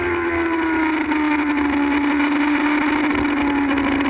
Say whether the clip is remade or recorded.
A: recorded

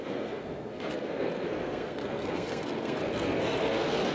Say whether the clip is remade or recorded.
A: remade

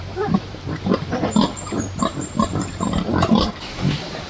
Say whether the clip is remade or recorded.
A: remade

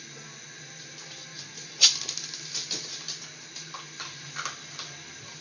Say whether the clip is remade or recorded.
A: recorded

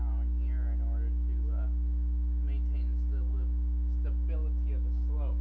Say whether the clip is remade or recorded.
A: recorded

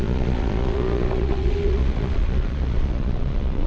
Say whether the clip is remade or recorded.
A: remade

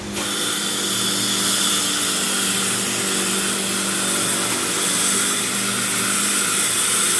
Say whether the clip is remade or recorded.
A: recorded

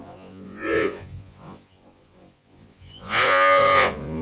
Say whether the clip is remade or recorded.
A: remade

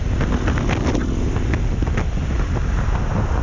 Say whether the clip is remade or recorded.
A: recorded